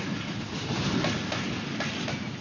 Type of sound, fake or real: real